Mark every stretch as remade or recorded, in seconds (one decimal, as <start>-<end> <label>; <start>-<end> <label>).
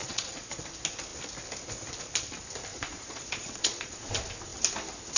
0.0-0.6 remade; 0.6-2.7 recorded; 2.7-4.1 remade; 4.1-5.2 recorded